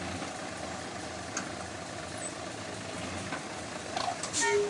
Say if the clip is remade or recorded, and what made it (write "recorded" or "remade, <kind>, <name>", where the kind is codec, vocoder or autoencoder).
recorded